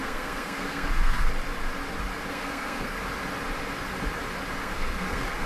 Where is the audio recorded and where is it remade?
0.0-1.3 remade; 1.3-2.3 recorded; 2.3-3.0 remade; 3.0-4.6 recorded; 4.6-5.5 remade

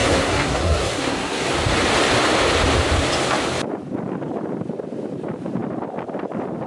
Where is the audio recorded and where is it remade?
0.0-1.5 remade; 1.5-6.7 recorded

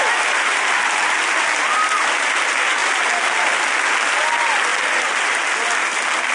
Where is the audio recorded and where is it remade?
0.0-6.3 recorded

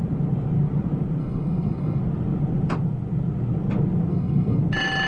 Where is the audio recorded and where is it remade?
0.0-1.2 recorded; 1.2-2.0 remade; 2.0-4.1 recorded; 4.1-4.6 remade; 4.6-5.1 recorded

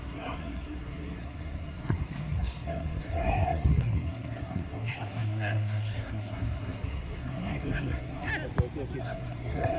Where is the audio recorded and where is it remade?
0.0-8.3 remade; 8.3-9.0 recorded; 9.0-9.8 remade

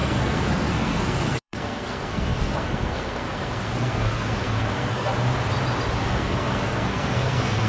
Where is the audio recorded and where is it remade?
0.0-5.1 remade; 5.1-6.0 recorded; 6.0-7.7 remade

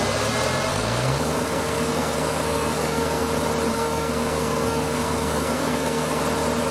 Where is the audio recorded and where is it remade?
0.0-0.7 recorded; 0.7-3.3 remade; 3.3-3.7 recorded; 3.7-6.2 remade; 6.2-6.7 recorded